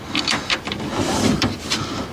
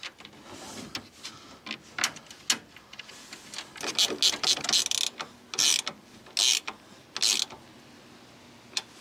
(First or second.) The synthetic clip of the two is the first